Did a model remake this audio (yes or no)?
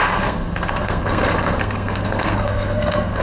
yes